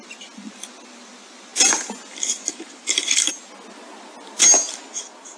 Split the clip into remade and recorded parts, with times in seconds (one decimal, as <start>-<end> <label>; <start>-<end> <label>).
0.0-5.4 recorded